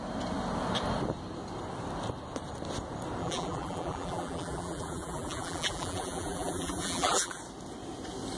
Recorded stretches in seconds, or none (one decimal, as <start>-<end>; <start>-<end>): 0.0-3.2; 7.4-8.4